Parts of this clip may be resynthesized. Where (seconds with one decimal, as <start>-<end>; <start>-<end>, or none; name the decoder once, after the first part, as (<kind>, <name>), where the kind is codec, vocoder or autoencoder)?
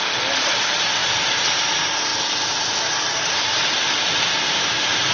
1.0-1.7 (vocoder, BigVGAN v2)